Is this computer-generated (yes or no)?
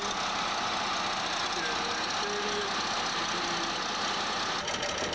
no